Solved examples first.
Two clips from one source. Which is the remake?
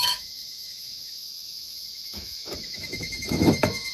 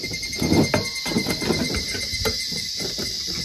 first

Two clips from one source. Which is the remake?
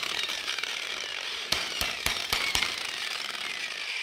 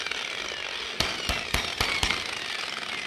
first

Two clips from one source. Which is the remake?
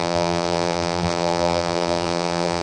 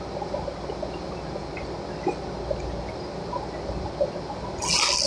first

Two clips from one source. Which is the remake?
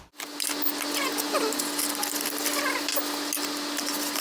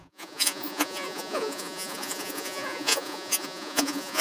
second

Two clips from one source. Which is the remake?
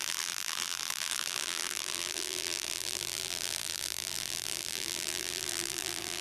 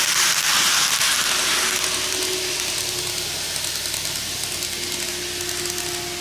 first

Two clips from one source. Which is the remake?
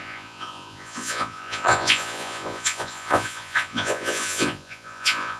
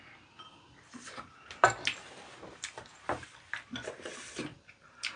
first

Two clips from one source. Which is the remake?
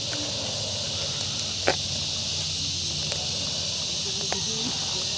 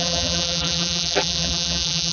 second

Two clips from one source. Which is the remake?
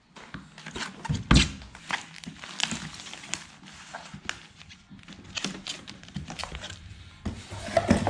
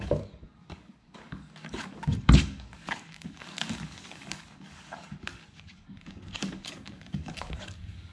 second